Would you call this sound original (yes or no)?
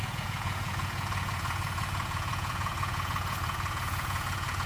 no